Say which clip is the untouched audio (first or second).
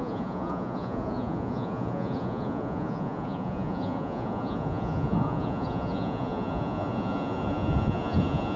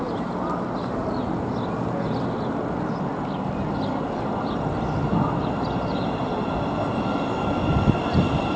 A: second